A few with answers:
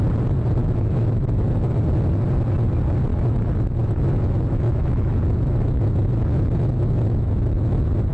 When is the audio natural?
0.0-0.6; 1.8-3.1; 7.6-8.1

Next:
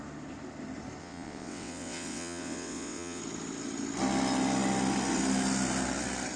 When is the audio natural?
0.0-1.0; 3.2-6.4